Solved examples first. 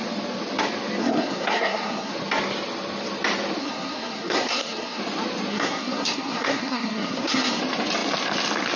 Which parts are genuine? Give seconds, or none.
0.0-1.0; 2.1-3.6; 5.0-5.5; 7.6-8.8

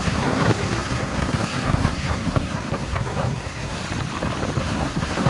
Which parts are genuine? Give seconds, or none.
3.8-4.6

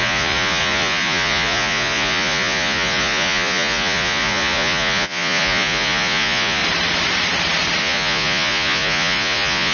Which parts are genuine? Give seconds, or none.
6.6-7.8

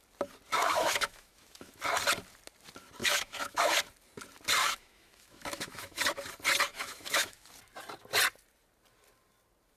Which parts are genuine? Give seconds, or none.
0.0-0.7; 1.8-3.0; 3.7-4.6; 6.0-6.7; 7.5-9.8

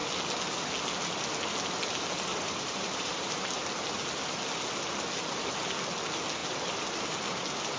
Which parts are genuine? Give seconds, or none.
0.0-2.3; 3.5-7.8